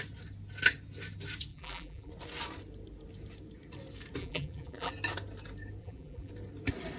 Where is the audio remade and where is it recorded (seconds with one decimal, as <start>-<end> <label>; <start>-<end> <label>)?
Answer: 0.0-1.5 recorded; 1.5-2.1 remade; 2.1-4.2 recorded; 4.2-4.9 remade; 4.9-5.8 recorded; 5.8-6.3 remade; 6.3-7.0 recorded